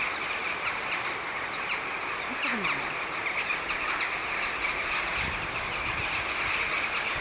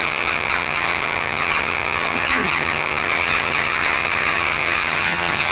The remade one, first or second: second